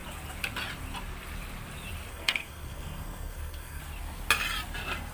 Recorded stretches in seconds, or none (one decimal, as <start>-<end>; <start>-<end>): 0.0-2.1; 3.8-5.1